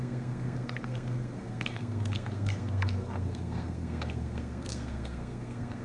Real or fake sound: fake